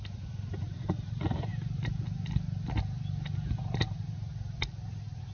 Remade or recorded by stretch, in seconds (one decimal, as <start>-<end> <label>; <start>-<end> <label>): 0.0-5.3 recorded